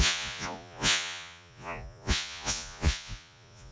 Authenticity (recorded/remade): remade